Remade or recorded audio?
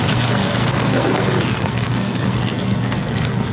remade